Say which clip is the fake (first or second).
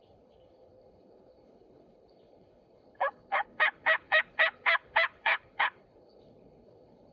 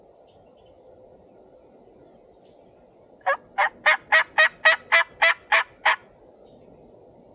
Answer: first